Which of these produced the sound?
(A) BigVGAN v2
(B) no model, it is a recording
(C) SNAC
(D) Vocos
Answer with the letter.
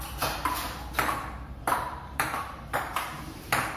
A